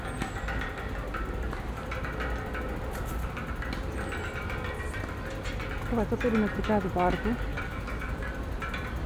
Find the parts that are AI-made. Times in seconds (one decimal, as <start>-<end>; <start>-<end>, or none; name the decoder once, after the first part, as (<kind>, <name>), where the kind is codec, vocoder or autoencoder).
7.5-8.3 (codec, DAC)